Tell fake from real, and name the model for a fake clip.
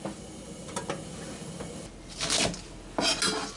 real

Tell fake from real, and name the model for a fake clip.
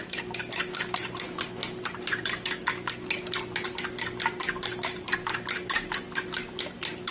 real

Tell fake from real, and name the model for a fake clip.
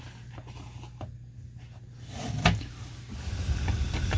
real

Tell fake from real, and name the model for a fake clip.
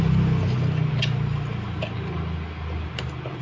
real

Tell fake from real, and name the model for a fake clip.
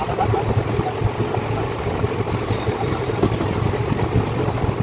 real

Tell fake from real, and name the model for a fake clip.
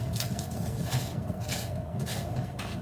fake, codec, SNAC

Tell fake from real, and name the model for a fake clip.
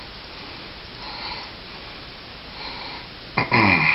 real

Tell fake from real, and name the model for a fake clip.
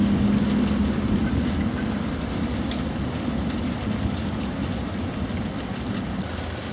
real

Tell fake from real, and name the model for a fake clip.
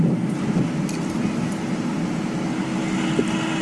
real